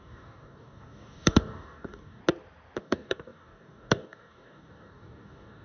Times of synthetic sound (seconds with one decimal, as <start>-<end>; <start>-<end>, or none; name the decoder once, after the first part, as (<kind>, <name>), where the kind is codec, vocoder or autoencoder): 0.0-2.2 (codec, DAC); 2.8-5.6